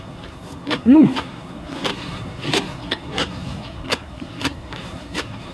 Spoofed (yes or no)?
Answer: yes